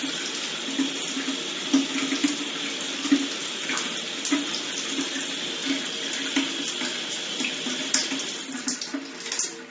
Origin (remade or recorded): recorded